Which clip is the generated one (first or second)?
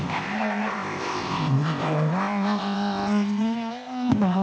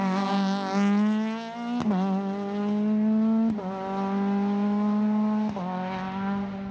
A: first